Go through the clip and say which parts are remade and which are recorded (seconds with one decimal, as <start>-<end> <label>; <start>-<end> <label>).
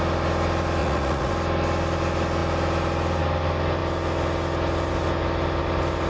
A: 0.0-0.8 recorded; 0.8-1.3 remade; 1.3-6.1 recorded